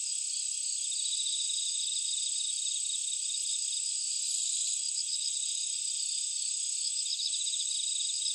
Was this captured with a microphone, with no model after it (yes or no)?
yes